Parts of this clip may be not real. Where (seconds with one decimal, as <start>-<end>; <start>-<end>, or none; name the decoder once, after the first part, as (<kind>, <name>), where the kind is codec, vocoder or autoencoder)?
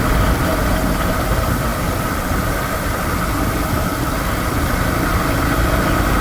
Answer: none